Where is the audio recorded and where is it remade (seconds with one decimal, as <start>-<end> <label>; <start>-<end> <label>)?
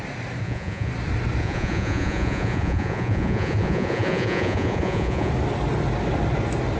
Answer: 0.0-0.4 recorded; 0.4-0.9 remade; 0.9-1.4 recorded; 1.4-5.3 remade; 5.3-6.8 recorded